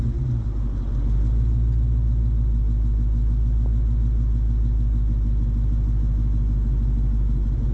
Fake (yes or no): no